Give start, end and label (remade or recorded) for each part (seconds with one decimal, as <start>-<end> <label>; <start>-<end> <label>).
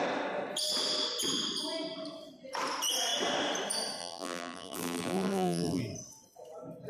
0.0-4.0 recorded; 4.0-5.8 remade; 5.8-6.9 recorded